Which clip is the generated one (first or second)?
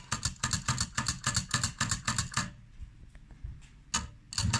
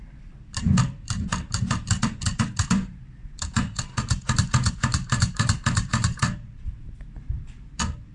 second